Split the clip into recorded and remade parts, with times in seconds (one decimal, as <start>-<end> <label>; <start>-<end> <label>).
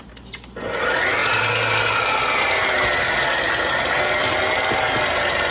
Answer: 0.0-5.5 recorded